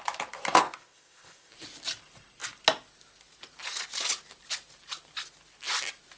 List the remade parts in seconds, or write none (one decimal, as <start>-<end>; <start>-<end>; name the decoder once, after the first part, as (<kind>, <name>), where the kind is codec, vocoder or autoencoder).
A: 0.6-1.5 (codec, ZipCodec)